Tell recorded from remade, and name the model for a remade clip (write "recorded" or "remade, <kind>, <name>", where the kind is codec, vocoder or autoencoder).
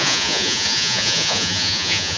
remade, vocoder, Vocos